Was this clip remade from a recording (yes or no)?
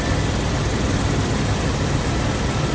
yes